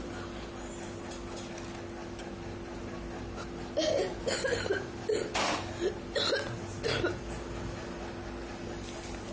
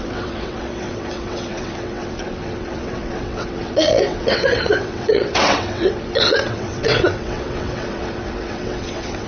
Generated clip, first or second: second